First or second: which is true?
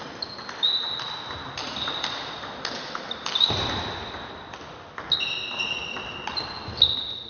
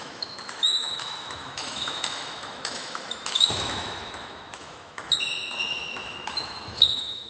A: first